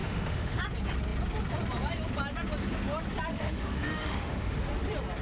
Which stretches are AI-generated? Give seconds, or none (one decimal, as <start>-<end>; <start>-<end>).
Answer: 0.0-0.6; 3.3-4.7